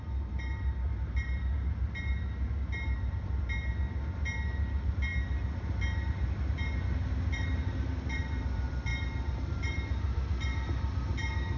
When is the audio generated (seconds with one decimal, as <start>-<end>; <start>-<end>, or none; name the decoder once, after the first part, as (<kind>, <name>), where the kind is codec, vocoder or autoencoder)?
none